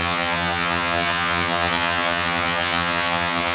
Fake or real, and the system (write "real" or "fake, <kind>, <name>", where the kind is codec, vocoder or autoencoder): fake, vocoder, HiFi-GAN